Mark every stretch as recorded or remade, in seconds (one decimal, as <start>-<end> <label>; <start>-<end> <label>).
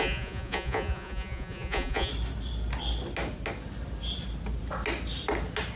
0.0-2.1 remade; 2.1-5.8 recorded